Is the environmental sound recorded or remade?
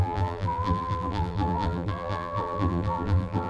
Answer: remade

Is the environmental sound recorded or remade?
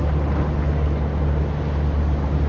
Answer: recorded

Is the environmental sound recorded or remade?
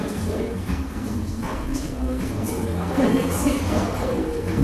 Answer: remade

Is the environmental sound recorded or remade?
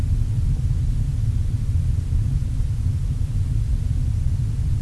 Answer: recorded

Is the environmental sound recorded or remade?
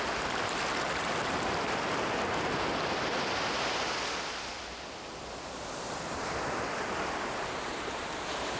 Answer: recorded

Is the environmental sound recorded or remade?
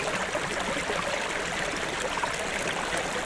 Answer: recorded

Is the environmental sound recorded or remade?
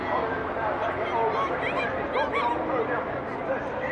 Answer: recorded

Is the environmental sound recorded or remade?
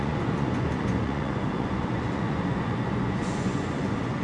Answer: remade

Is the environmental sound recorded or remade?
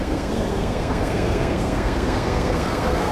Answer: remade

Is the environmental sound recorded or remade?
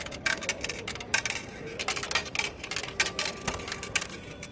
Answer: recorded